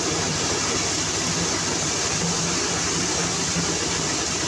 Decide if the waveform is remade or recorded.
recorded